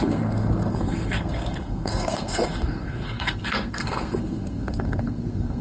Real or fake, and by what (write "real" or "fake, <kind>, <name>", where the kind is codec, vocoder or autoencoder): fake, codec, SNAC